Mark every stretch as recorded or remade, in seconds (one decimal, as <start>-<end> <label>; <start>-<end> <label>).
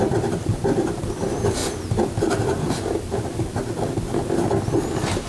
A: 0.0-5.3 recorded